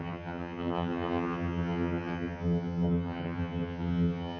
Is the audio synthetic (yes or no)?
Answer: yes